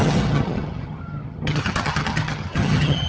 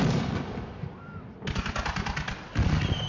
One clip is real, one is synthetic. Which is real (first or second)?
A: second